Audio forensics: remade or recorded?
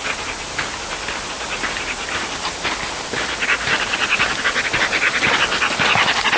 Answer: recorded